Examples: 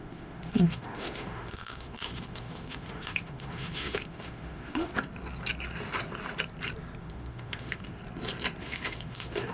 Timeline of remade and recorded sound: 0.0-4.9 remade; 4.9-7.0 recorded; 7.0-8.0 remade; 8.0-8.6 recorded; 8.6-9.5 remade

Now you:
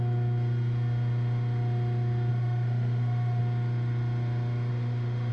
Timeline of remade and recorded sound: 0.0-2.3 recorded; 2.3-3.4 remade; 3.4-4.7 recorded; 4.7-5.3 remade

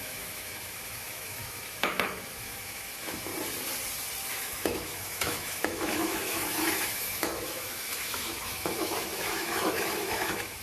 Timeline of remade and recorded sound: 0.0-3.3 remade; 3.3-4.3 recorded; 4.3-10.6 remade